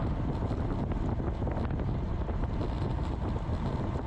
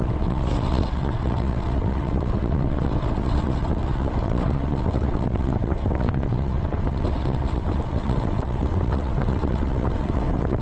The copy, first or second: second